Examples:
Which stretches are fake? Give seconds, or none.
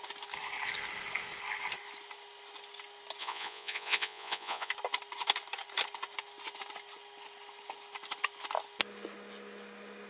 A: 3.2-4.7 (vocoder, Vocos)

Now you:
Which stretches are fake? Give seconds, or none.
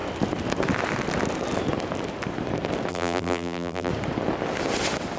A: 2.9-3.9 (vocoder, BigVGAN v2)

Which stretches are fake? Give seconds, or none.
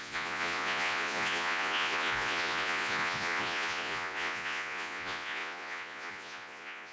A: 0.0-6.9 (vocoder, Vocos)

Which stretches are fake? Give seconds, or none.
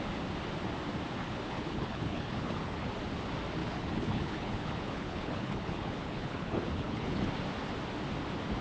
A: 1.2-2.9 (codec, HILCodec); 3.6-7.3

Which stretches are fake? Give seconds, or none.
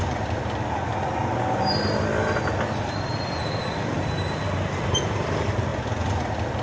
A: 0.0-0.9 (vocoder, BigVGAN v2); 3.1-5.7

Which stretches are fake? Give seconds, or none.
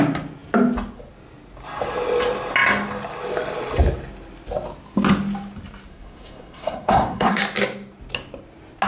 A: 5.9-7.4 (codec, SNAC)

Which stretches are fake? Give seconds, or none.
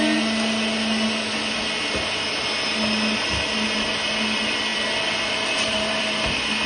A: 4.7-6.0 (vocoder, BigVGAN v2)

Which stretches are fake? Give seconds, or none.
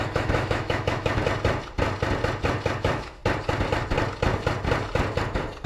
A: 0.0-1.2 (autoencoder, DAC-VAE); 2.8-3.2